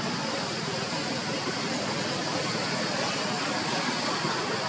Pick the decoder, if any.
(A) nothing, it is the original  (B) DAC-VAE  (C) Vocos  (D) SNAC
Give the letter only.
A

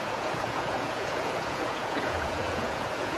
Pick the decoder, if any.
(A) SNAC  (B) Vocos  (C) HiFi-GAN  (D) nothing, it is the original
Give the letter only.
B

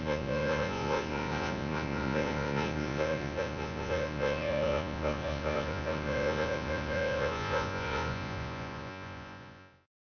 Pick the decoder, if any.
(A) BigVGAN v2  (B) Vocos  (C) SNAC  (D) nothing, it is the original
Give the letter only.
B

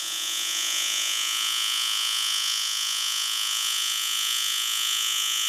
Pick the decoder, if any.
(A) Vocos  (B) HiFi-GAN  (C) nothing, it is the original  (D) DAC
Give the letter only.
A